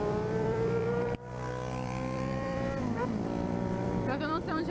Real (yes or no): no